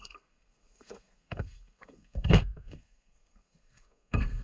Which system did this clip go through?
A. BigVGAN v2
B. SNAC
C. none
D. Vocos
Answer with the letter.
B